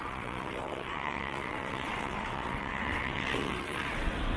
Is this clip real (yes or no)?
no